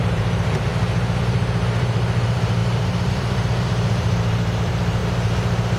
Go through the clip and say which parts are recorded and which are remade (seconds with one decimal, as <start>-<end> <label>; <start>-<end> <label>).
0.0-0.7 remade; 0.7-1.2 recorded; 1.2-5.8 remade